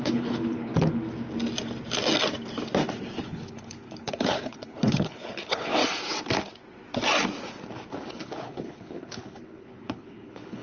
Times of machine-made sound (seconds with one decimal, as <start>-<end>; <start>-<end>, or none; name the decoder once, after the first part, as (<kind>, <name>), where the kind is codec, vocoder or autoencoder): 0.0-0.7 (codec, HILCodec); 3.2-5.8; 8.1-10.6